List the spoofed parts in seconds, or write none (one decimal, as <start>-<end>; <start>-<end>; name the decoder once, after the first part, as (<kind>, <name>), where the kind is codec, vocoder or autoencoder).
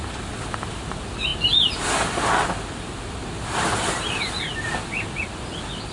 none